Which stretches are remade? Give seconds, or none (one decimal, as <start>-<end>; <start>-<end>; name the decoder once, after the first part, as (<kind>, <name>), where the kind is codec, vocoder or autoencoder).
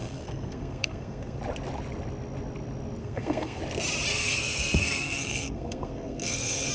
0.0-1.4 (codec, SNAC); 3.0-3.6; 4.1-6.7